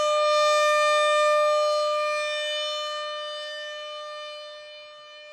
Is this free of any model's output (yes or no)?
yes